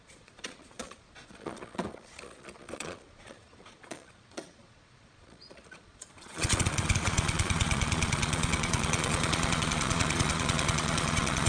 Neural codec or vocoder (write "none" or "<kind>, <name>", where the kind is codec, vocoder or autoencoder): vocoder, Vocos